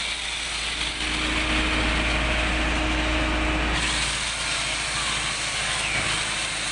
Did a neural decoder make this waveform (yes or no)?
no